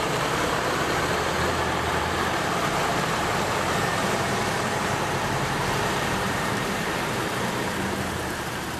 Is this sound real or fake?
fake